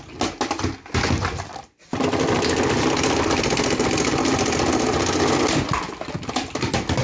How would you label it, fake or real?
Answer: real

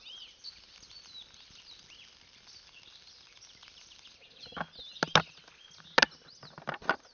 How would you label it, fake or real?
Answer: real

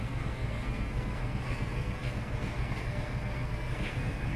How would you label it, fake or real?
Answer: fake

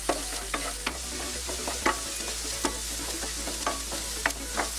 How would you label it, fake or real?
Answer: real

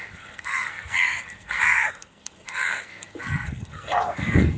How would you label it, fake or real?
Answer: fake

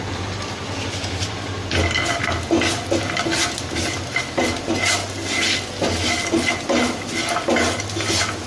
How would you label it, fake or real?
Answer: real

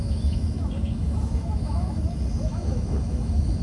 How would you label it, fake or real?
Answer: fake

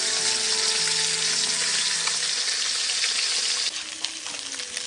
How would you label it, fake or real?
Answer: real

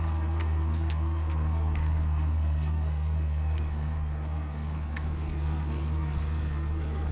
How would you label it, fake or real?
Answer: fake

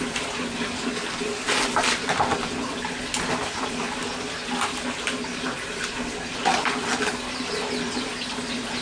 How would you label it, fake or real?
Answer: real